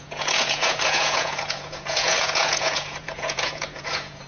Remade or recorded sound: remade